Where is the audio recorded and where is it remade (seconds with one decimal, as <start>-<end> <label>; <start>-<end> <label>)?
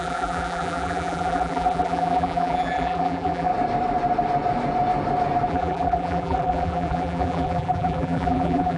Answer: 0.0-3.5 remade; 3.5-5.5 recorded; 5.5-8.8 remade